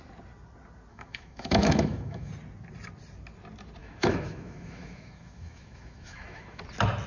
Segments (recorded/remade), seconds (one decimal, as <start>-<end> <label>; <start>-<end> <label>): 0.0-0.9 recorded; 0.9-2.3 remade; 2.3-3.8 recorded; 3.8-6.6 remade; 6.6-7.1 recorded